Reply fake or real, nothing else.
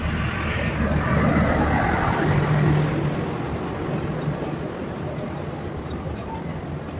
real